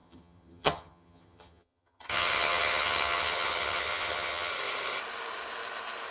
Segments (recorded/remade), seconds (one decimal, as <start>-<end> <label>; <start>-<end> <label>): 0.0-4.5 remade; 4.5-6.1 recorded

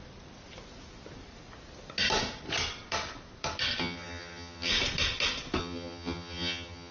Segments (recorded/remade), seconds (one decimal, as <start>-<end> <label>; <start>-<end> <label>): 0.0-3.8 recorded; 3.8-4.7 remade; 4.7-5.6 recorded; 5.6-6.9 remade

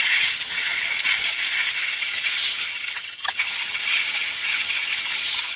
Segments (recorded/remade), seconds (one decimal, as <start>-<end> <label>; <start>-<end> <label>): 0.0-0.7 remade; 0.7-1.7 recorded; 1.7-5.6 remade

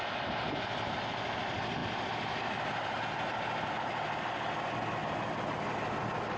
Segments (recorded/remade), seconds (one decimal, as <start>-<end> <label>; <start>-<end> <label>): 0.0-6.4 recorded